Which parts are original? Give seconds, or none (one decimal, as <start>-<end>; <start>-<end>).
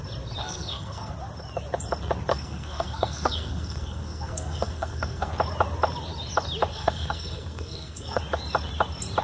0.0-0.4; 1.1-2.3; 5.3-6.7; 8.2-9.2